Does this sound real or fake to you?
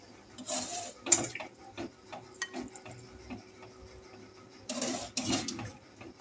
real